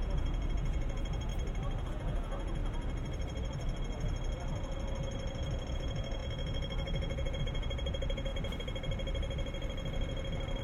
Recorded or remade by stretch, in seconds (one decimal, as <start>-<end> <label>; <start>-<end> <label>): 0.0-1.3 remade; 1.3-1.9 recorded; 1.9-2.6 remade; 2.6-5.7 recorded; 5.7-8.3 remade; 8.3-10.6 recorded